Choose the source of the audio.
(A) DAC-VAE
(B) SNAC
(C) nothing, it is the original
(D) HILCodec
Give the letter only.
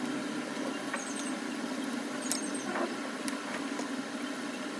C